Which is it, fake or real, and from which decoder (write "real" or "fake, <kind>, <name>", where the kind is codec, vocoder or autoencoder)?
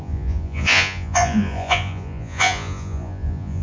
fake, vocoder, Vocos